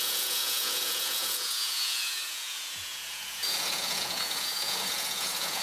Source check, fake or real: fake